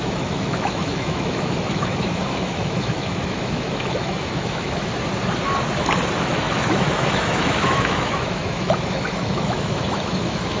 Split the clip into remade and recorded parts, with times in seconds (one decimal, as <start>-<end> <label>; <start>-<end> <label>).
0.0-4.9 remade; 4.9-6.2 recorded; 6.2-10.6 remade